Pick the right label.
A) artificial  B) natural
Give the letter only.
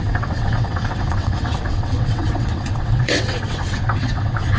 A